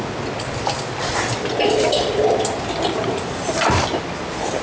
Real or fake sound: real